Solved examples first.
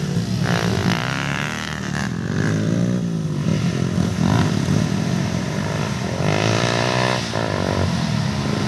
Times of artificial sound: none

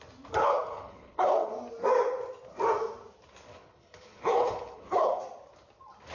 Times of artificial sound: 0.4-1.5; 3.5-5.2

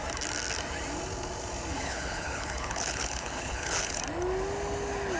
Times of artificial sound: 1.7-4.0

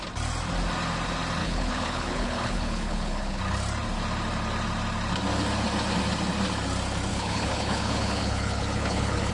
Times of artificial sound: 1.4-3.4; 7.1-9.3

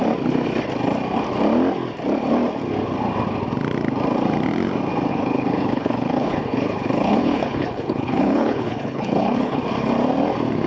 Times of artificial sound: 5.1-9.6

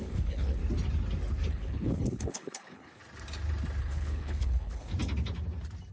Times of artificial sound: 0.0-0.6; 1.5-3.0; 3.8-4.9

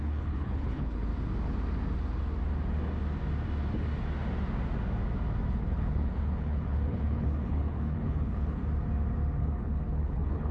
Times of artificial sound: 0.0-1.1; 5.5-8.6; 9.4-10.5